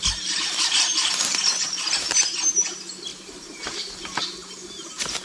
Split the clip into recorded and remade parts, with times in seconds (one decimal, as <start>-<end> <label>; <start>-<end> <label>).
0.0-3.1 recorded; 3.1-5.2 remade